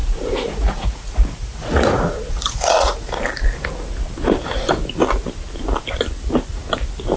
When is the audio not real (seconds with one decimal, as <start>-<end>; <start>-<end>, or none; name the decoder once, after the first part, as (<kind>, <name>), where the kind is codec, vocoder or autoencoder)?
0.0-3.2 (vocoder, Vocos)